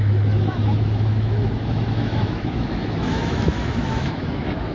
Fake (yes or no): yes